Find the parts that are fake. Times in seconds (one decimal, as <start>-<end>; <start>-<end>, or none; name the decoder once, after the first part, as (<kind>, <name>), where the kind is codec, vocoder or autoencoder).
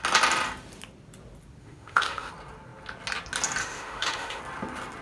1.6-2.3 (autoencoder, DAC-VAE); 3.6-4.4